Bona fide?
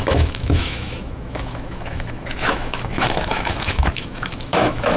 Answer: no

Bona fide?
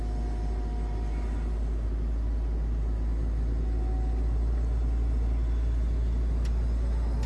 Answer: yes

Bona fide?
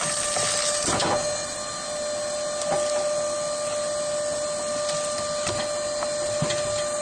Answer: yes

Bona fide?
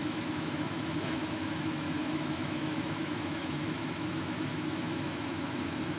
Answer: no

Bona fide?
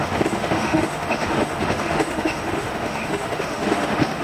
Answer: no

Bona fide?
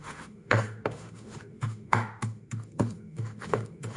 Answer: no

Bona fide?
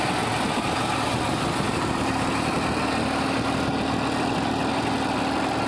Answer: yes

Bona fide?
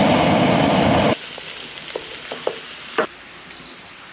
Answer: yes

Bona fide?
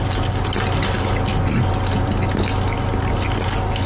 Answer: yes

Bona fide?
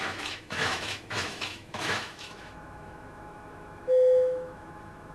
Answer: no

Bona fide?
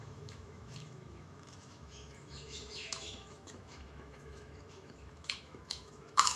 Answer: no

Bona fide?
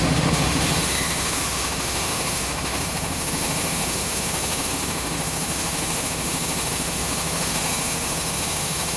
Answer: no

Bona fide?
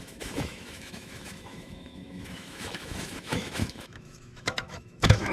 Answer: no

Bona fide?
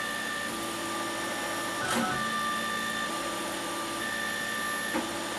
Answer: yes